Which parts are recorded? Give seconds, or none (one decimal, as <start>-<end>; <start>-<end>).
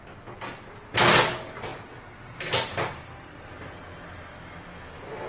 0.0-5.3